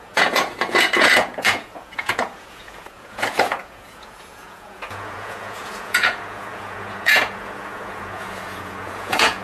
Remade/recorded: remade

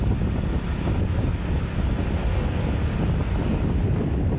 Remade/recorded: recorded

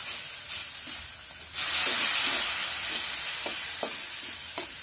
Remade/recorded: recorded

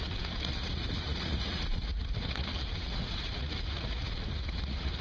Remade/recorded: remade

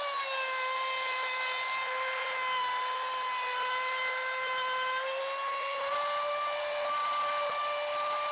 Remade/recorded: recorded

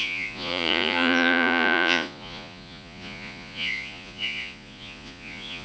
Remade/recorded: remade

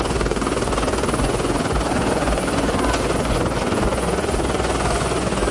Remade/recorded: remade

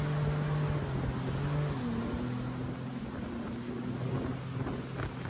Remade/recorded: recorded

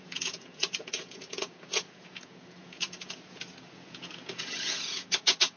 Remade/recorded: remade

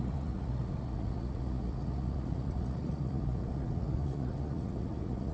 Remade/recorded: remade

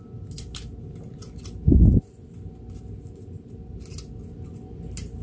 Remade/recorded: recorded